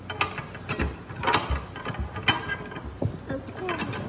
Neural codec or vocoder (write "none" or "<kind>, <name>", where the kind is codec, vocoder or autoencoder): none